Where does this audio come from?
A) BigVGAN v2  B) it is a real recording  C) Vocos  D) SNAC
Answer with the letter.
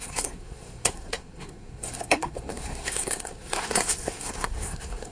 D